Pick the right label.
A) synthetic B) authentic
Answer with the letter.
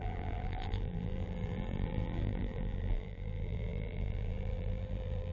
A